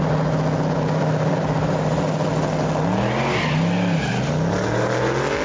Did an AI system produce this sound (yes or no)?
no